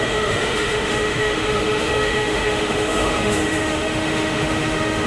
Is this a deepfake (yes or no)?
yes